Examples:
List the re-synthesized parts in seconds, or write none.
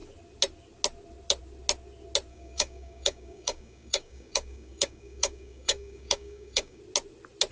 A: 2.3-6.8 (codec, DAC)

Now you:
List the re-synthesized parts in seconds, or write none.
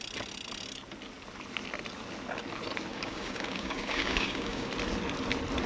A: 2.9-4.7 (codec, DAC)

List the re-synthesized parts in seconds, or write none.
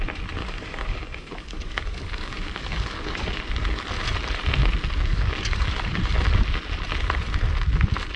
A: 0.4-3.4 (codec, DAC); 5.1-6.0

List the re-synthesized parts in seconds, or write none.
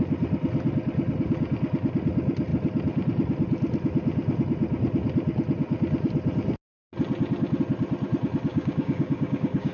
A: 8.5-9.7 (codec, DAC)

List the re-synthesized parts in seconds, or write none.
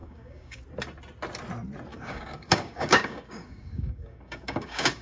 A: 0.0-0.6 (codec, DAC); 1.9-5.0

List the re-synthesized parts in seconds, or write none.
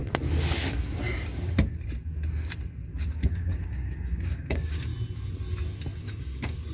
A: 2.9-4.9 (codec, DAC); 6.0-6.7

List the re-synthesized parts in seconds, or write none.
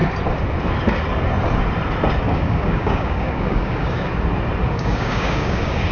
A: 2.2-4.1 (codec, DAC); 4.7-5.9